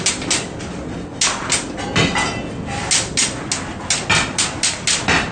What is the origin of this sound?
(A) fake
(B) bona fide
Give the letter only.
B